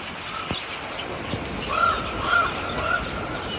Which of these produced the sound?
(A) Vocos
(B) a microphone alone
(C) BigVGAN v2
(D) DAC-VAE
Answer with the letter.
B